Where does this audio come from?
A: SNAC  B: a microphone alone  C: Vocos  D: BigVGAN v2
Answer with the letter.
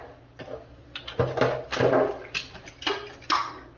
B